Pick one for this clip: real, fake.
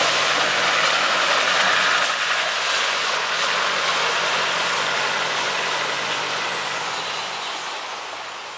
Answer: fake